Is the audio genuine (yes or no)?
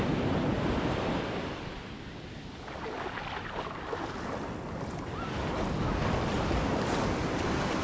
yes